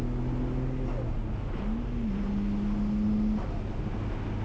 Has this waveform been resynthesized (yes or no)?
no